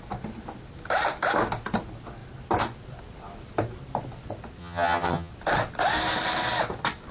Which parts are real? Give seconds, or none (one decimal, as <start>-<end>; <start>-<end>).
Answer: 0.0-4.6; 5.3-7.1